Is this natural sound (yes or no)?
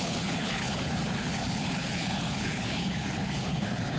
no